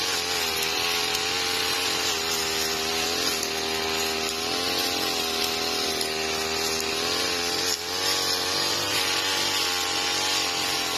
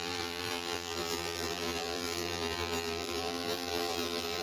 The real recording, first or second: first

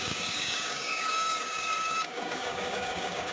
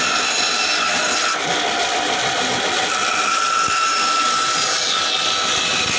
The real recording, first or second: second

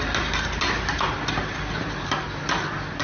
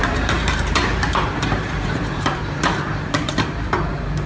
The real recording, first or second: first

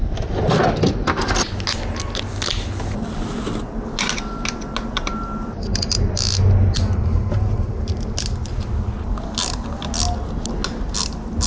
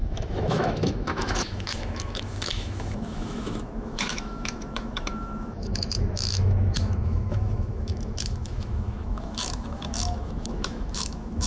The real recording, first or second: first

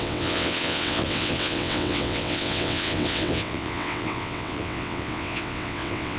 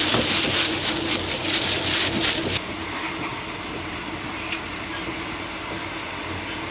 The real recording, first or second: second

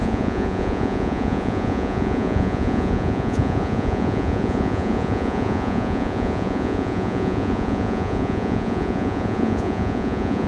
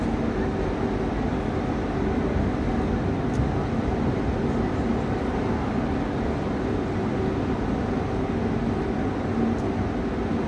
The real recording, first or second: second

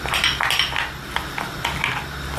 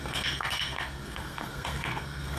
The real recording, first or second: first